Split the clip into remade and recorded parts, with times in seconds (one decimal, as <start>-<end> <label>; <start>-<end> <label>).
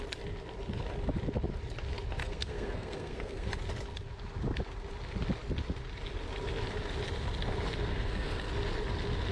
0.0-2.2 recorded; 2.2-3.5 remade; 3.5-7.9 recorded; 7.9-8.5 remade; 8.5-9.3 recorded